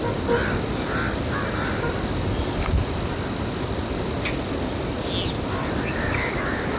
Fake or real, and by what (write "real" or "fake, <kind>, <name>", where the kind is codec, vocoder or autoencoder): real